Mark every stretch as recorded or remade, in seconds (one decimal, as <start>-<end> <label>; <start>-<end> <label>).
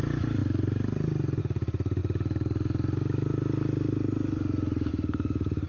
0.0-5.7 recorded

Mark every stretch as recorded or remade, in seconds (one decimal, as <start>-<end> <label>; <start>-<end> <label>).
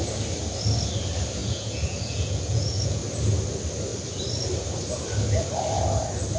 0.0-1.4 recorded; 1.4-3.0 remade; 3.0-6.4 recorded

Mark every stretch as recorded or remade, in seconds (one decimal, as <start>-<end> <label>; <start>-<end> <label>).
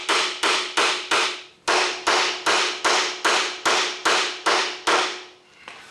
0.0-5.9 recorded